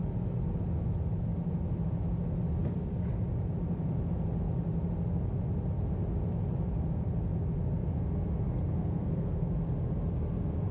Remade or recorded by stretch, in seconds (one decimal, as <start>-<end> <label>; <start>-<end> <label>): 0.0-8.7 recorded; 8.7-9.5 remade; 9.5-10.7 recorded